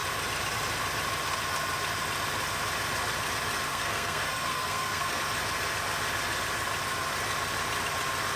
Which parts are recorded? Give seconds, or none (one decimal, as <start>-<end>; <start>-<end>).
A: 0.0-3.7; 5.2-8.4